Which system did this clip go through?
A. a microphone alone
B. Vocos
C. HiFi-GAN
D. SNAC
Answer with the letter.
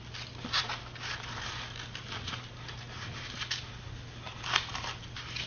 A